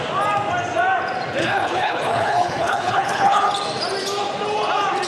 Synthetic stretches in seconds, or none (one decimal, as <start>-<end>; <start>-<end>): 1.4-3.5